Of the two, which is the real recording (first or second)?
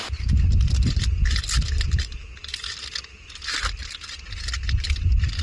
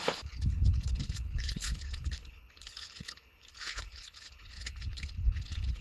first